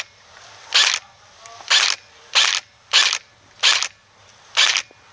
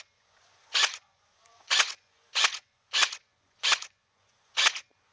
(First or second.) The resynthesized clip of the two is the second